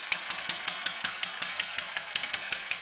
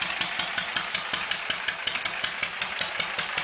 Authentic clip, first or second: second